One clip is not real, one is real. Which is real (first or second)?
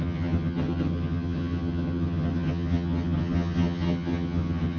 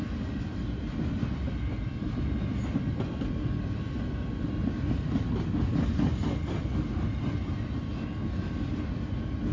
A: second